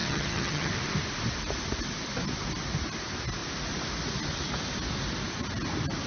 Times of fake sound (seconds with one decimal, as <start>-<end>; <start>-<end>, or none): 0.0-0.7